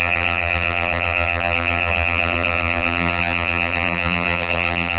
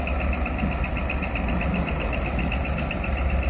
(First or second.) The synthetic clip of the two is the first